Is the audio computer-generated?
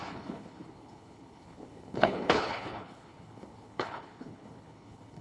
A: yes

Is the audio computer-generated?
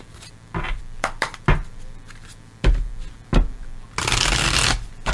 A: no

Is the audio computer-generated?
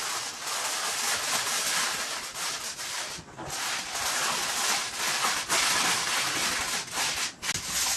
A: no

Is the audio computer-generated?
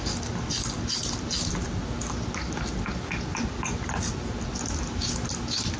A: no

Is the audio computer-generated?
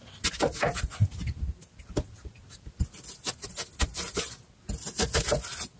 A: no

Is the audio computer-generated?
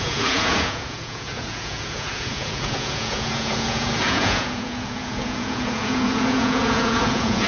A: yes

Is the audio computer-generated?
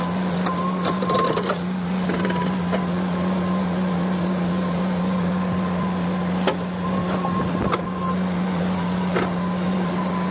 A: no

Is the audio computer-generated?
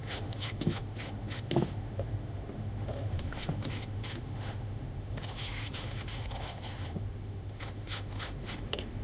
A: yes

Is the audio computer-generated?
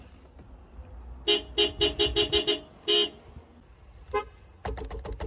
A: no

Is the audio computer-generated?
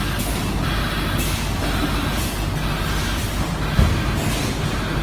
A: no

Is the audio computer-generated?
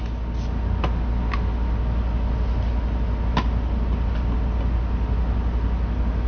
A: no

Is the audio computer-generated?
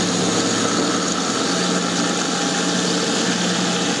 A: no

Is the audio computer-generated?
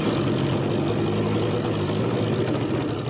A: no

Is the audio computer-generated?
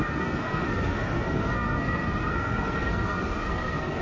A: yes